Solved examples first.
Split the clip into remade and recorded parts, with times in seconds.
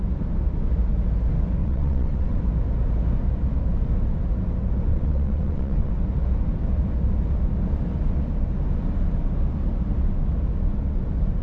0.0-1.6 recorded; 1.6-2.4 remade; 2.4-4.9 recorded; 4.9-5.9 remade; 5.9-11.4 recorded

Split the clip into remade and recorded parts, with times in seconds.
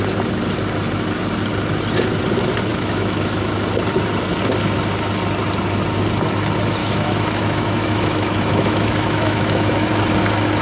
0.0-2.7 recorded; 2.7-3.5 remade; 3.5-6.8 recorded; 6.8-9.9 remade; 9.9-10.6 recorded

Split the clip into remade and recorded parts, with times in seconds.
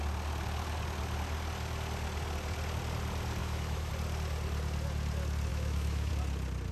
0.0-3.4 recorded; 3.4-3.9 remade; 3.9-5.5 recorded; 5.5-6.1 remade; 6.1-6.7 recorded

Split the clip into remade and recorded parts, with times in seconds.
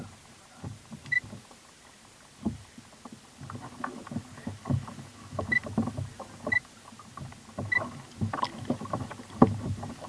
0.0-1.4 remade; 1.4-10.1 recorded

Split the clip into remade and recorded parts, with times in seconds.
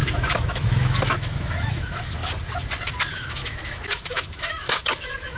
0.0-2.2 remade; 2.2-3.1 recorded; 3.1-5.4 remade